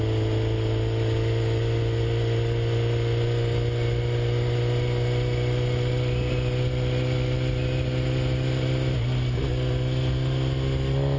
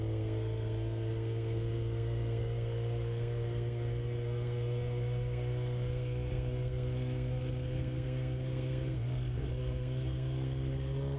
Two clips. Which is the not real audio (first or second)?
second